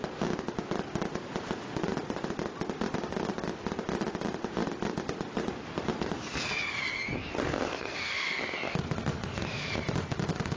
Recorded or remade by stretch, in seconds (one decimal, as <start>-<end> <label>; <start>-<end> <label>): 0.0-7.7 recorded; 7.7-8.4 remade; 8.4-10.6 recorded